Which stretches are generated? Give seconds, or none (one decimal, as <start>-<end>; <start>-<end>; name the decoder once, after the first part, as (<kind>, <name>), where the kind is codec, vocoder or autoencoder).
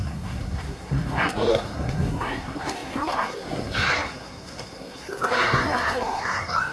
0.0-6.7 (codec, SNAC)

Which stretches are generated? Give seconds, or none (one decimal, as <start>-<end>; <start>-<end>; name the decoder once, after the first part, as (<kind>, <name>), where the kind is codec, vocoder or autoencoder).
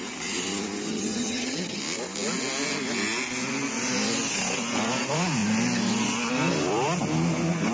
0.9-1.8 (vocoder, HiFi-GAN)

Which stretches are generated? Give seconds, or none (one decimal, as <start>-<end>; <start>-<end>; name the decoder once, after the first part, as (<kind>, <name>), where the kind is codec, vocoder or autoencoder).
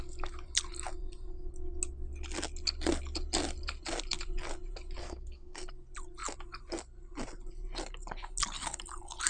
5.0-5.7 (codec, SNAC)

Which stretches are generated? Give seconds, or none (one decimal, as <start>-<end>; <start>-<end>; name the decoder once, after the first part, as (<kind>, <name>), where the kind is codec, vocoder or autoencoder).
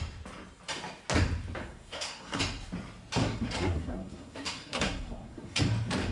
1.6-2.4 (codec, SNAC); 3.2-5.6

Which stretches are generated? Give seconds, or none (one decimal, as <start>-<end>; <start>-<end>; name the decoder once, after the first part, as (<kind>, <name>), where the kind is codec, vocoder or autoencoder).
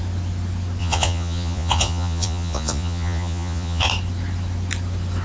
0.8-3.9 (vocoder, Vocos)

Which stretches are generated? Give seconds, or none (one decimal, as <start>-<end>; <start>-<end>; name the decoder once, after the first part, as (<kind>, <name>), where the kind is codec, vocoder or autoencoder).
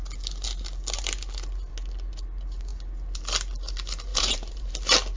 4.1-4.7 (vocoder, BigVGAN v2)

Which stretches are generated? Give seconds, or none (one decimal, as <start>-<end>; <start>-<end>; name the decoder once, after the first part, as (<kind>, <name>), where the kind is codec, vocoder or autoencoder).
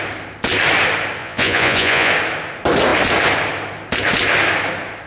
1.2-2.1 (vocoder, Vocos)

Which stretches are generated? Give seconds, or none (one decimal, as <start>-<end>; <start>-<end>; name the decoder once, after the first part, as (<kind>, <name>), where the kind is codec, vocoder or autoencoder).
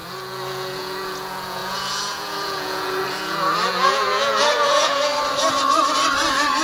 0.0-5.1 (vocoder, Vocos)